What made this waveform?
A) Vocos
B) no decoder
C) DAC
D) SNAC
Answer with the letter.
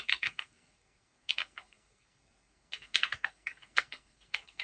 D